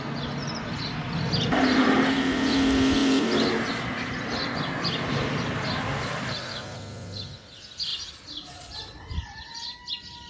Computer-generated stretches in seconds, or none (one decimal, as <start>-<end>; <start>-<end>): none